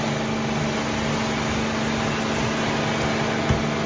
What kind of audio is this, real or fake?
real